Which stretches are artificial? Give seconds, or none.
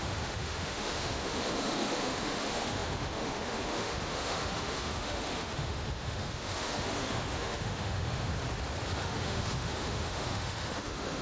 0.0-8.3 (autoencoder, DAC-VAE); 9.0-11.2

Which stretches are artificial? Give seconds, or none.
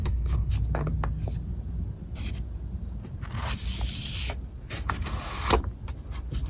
0.0-0.5 (codec, HILCodec)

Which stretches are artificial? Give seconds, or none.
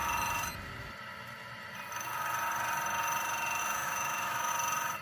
3.6-4.5 (autoencoder, DAC-VAE)